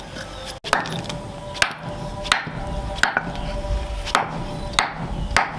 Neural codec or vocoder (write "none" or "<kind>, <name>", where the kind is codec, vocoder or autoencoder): none